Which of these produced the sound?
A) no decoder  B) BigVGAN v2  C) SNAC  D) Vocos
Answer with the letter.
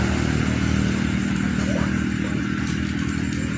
A